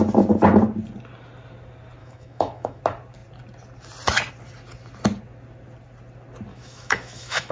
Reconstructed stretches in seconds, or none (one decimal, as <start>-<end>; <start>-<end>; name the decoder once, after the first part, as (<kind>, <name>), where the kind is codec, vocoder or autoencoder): 2.0-2.8 (autoencoder, DAC-VAE); 6.5-7.5